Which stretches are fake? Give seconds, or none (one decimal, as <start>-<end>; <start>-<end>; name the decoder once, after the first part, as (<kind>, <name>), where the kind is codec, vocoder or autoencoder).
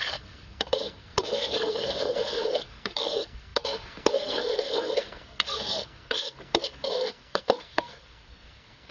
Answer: 0.0-8.9 (codec, SNAC)